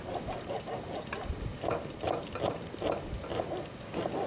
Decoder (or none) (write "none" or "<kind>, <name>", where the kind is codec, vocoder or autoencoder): none